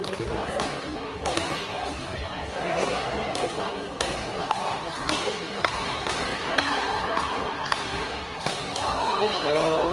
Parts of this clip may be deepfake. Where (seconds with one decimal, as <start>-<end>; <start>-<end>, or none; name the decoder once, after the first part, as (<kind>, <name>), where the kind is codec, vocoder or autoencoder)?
0.0-9.9 (codec, SNAC)

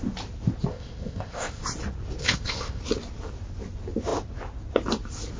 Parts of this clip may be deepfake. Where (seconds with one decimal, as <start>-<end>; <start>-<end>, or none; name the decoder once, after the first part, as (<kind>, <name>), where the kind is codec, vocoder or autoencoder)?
0.7-1.6 (codec, ZipCodec); 2.2-2.8

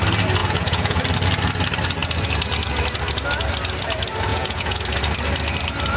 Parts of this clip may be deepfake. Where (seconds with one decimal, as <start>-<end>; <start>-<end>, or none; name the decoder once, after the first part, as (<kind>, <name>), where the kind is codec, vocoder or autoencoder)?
0.4-1.0 (vocoder, Vocos); 4.3-4.8

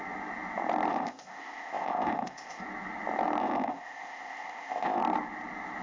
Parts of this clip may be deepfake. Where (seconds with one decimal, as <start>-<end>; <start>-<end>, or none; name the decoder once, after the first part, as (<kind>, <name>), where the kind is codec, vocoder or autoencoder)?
0.9-2.6 (codec, ZipCodec); 3.4-5.0

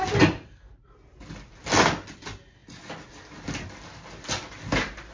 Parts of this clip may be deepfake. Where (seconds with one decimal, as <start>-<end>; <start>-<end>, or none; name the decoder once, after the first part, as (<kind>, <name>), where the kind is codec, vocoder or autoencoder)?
none

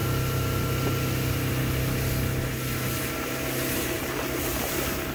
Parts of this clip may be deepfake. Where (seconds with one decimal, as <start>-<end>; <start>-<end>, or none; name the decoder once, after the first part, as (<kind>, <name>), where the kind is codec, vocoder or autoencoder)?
none